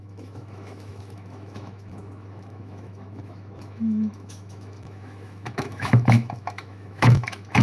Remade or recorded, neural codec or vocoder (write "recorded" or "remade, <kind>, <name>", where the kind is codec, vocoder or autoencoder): remade, autoencoder, DAC-VAE